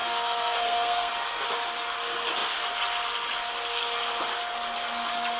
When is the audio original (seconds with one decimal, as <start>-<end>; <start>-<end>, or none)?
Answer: 1.1-5.4